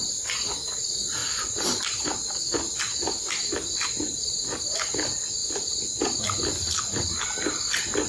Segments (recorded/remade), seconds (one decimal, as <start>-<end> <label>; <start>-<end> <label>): 0.0-8.1 recorded